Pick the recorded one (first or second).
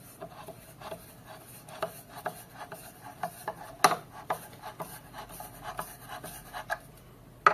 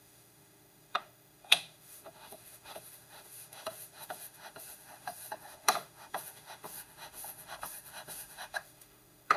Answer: first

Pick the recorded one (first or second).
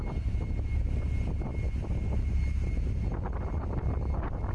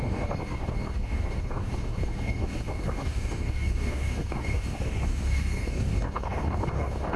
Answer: first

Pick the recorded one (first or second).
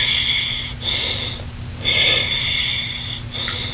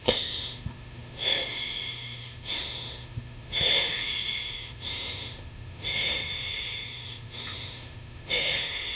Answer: first